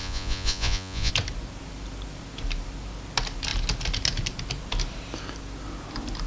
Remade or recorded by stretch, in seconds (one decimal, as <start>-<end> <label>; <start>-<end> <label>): 0.0-1.1 remade; 1.1-6.3 recorded